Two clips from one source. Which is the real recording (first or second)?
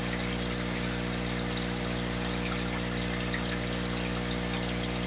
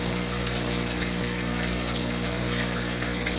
first